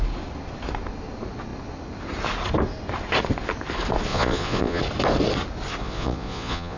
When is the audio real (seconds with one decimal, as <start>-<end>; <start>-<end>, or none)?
0.0-4.1; 4.8-5.8